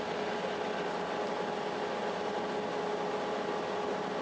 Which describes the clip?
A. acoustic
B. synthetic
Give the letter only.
A